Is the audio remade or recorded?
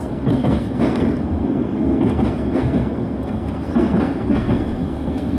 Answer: remade